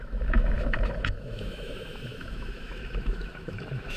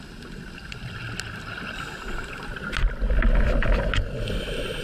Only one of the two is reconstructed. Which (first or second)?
first